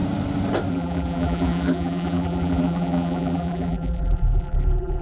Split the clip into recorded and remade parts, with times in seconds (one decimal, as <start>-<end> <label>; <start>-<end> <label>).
0.0-0.7 recorded; 0.7-5.0 remade